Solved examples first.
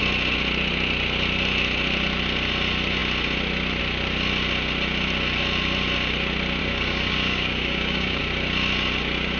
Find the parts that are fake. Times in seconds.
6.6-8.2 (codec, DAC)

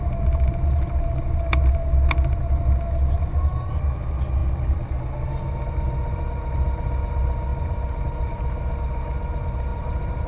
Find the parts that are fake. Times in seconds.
7.5-8.0 (vocoder, BigVGAN v2); 9.7-10.3

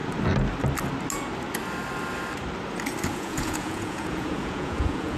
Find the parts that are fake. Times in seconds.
3.1-5.2 (vocoder, Vocos)

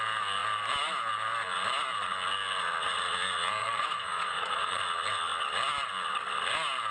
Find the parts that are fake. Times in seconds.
3.6-4.8 (vocoder, Vocos)

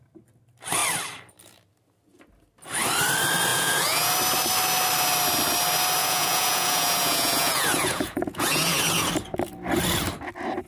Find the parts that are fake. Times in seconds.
3.5-4.1 (vocoder, Vocos); 6.0-9.1

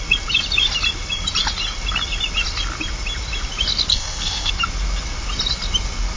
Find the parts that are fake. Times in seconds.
3.9-4.5 (codec, SNAC)